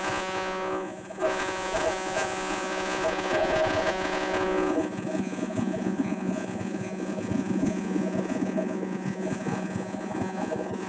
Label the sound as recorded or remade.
remade